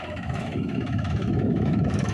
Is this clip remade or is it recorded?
remade